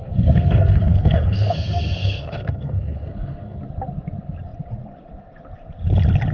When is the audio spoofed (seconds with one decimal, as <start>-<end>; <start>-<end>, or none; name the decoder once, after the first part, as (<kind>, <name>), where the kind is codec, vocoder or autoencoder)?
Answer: 0.0-3.6 (codec, SNAC)